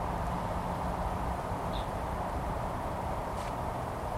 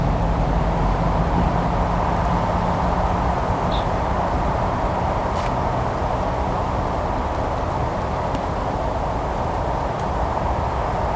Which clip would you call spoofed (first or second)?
first